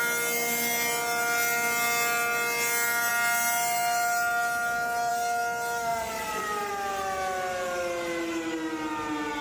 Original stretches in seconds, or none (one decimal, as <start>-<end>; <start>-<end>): 0.0-5.9; 6.7-9.4